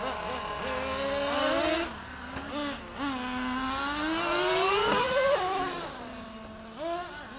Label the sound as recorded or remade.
recorded